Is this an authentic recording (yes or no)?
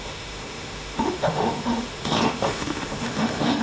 no